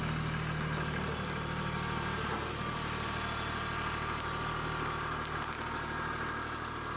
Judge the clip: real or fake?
real